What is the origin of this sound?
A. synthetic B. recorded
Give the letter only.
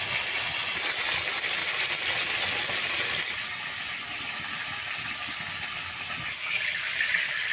B